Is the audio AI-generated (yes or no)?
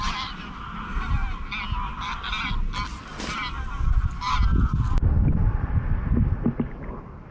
no